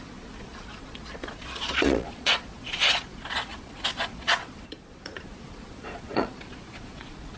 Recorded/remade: remade